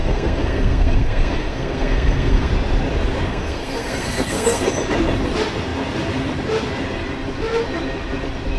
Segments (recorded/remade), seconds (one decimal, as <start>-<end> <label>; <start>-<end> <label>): 0.0-2.5 remade; 2.5-3.3 recorded; 3.3-4.7 remade; 4.7-8.6 recorded

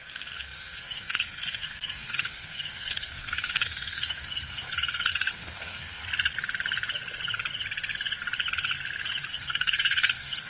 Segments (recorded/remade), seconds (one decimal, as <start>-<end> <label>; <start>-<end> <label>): 0.0-6.0 remade; 6.0-9.3 recorded; 9.3-10.5 remade

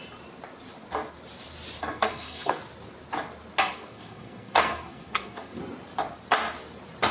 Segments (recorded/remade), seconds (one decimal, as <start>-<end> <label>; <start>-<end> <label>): 0.0-1.8 recorded; 1.8-2.6 remade; 2.6-3.6 recorded; 3.6-5.6 remade; 5.6-7.1 recorded

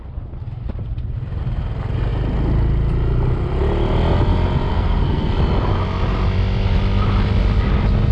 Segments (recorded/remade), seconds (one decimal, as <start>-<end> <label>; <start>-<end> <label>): 0.0-4.7 recorded; 4.7-5.3 remade; 5.3-8.1 recorded